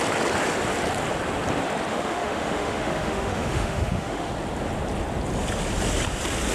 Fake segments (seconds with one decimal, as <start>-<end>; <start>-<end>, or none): 1.9-4.3